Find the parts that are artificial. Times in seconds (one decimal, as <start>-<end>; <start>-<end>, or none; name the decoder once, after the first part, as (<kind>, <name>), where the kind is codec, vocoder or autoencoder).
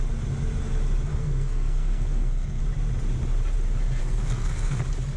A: 1.1-2.6 (codec, SNAC); 4.0-4.8